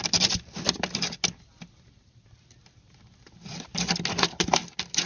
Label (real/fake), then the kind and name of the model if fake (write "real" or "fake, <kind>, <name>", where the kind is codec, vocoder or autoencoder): real